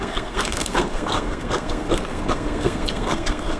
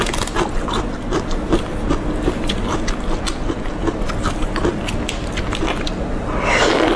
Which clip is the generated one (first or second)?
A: first